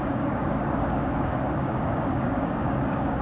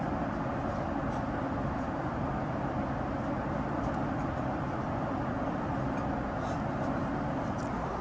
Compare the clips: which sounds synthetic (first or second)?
first